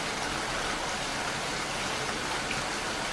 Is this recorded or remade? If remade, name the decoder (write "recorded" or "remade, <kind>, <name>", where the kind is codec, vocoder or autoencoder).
recorded